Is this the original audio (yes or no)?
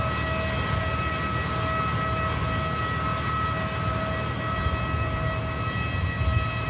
yes